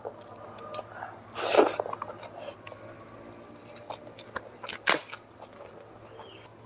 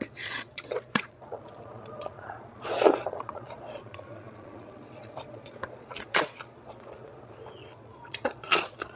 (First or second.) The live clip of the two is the first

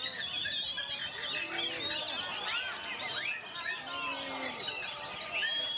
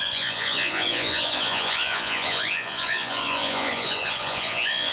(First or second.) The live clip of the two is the first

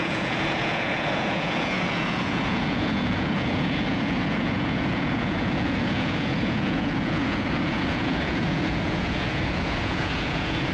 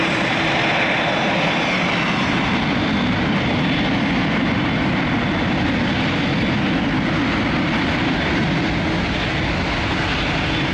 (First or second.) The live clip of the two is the second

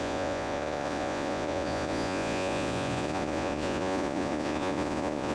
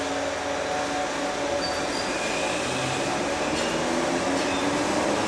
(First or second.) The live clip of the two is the second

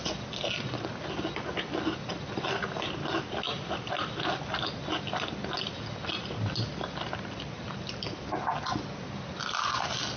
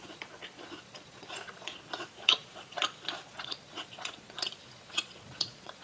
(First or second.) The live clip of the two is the first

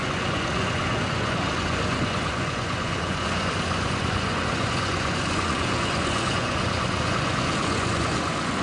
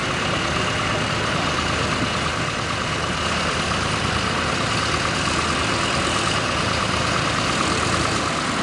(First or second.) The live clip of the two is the second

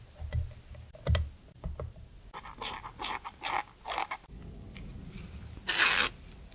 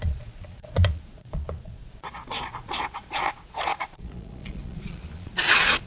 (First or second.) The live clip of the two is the first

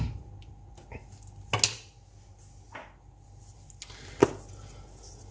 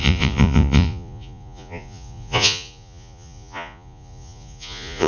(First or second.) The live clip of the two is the first